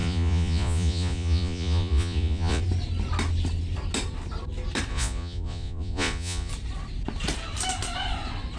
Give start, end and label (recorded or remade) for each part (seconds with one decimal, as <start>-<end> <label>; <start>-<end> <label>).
0.0-2.6 remade; 2.6-4.9 recorded; 4.9-6.5 remade; 6.5-8.6 recorded